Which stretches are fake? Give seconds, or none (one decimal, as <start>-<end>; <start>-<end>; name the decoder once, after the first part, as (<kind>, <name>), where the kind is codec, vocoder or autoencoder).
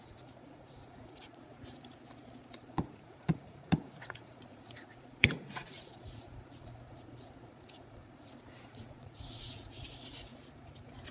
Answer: 0.0-1.5 (vocoder, Vocos); 2.6-10.3